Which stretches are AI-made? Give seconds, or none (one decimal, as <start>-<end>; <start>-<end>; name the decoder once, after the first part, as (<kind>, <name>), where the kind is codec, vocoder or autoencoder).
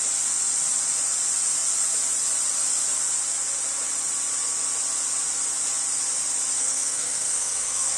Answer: 6.6-8.0 (codec, SNAC)